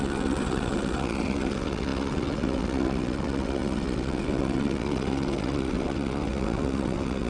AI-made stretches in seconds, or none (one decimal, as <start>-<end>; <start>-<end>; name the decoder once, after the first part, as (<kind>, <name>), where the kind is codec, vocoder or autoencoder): 0.0-7.3 (vocoder, WaveNeXt)